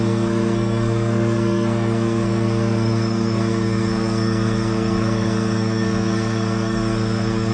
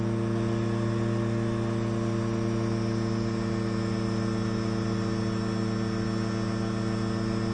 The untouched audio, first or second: second